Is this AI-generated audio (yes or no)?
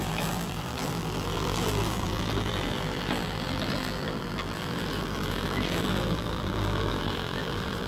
yes